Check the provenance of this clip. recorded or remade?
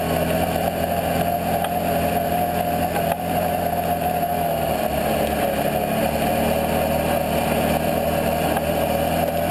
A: recorded